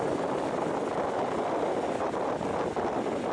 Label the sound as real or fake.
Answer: real